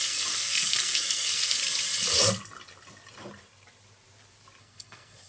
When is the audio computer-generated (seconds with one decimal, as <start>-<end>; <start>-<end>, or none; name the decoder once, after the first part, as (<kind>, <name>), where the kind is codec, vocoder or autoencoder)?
0.0-1.6 (codec, SNAC); 4.6-5.3